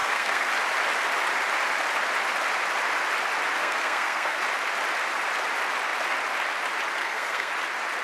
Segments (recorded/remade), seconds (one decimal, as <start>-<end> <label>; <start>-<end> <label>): 0.0-0.5 remade; 0.5-3.6 recorded; 3.6-4.4 remade; 4.4-7.0 recorded; 7.0-7.5 remade; 7.5-8.0 recorded